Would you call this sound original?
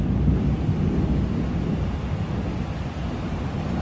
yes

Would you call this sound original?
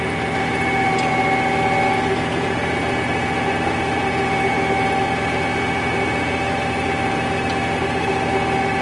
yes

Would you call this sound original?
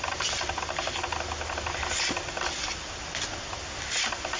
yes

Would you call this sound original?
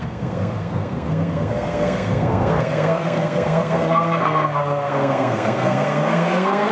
no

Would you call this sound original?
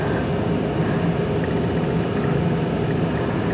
yes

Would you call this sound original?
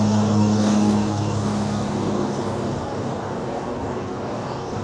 no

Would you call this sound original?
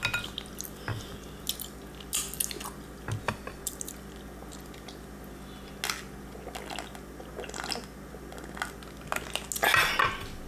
yes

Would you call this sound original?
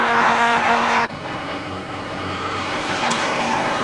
no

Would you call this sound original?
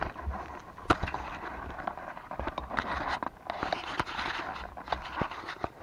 yes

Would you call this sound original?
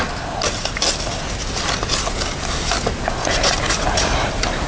yes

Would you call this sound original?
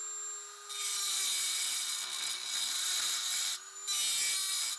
yes